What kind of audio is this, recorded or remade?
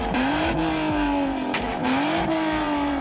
remade